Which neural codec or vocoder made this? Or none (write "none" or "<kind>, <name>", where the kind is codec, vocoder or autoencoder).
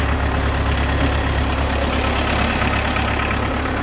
none